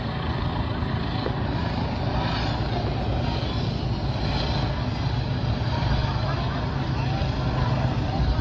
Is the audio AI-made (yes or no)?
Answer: no